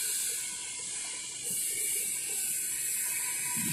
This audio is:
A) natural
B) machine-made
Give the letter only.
A